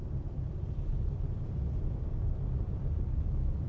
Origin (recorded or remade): remade